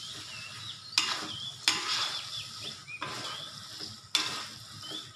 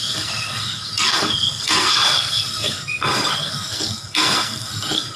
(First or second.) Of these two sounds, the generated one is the second